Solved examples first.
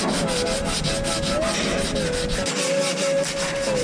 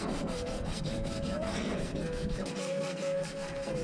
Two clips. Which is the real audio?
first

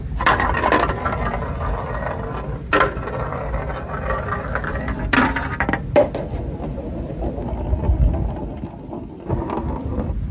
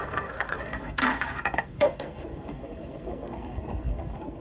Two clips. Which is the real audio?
first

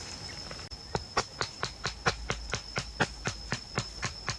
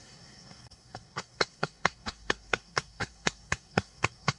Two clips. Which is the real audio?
first